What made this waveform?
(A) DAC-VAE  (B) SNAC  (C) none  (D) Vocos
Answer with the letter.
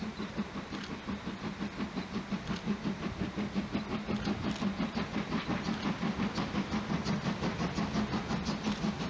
C